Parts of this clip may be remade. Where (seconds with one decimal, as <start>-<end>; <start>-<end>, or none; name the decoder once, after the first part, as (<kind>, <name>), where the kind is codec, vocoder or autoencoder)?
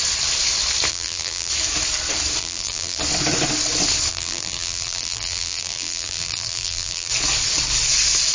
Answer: 0.9-1.5 (vocoder, BigVGAN v2); 2.4-3.0; 4.1-7.1